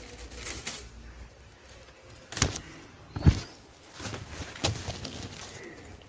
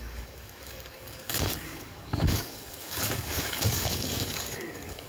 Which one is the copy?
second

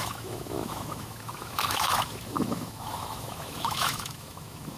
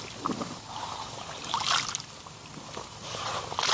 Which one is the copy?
first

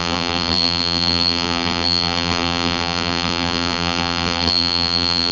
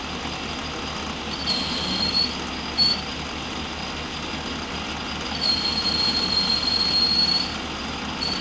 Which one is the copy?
first